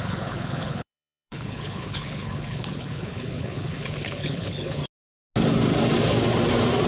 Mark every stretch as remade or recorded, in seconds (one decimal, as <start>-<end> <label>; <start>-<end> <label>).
0.0-4.8 remade; 4.8-6.9 recorded